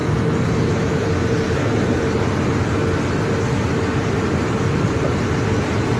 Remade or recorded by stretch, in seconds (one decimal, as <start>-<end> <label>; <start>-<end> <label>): 0.0-0.6 recorded; 0.6-2.8 remade; 2.8-3.5 recorded; 3.5-6.0 remade